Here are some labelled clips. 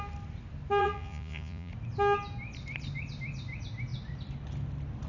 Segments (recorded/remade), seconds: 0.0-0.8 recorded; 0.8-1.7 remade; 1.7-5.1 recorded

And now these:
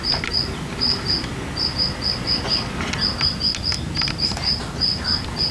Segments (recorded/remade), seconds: 0.0-1.3 remade; 1.3-4.6 recorded; 4.6-5.5 remade

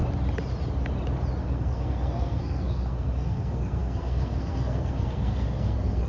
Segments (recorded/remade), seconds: 0.0-1.4 recorded; 1.4-6.1 remade

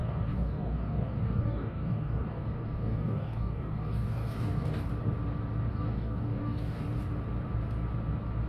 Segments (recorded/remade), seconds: 0.0-4.9 remade; 4.9-5.7 recorded; 5.7-6.8 remade; 6.8-8.5 recorded

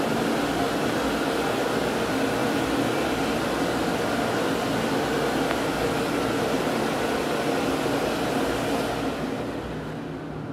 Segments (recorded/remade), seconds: 0.0-10.5 recorded

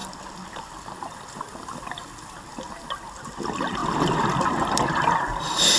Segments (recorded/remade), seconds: 0.0-5.8 recorded

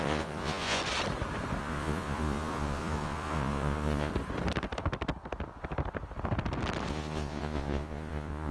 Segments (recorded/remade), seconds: 0.0-0.8 remade; 0.8-1.6 recorded; 1.6-4.1 remade; 4.1-6.9 recorded; 6.9-8.5 remade

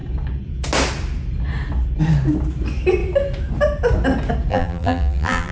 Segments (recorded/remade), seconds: 0.0-4.5 recorded; 4.5-5.5 remade